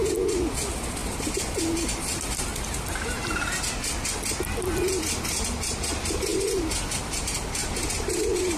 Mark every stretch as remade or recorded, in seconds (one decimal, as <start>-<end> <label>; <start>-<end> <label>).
0.0-8.6 recorded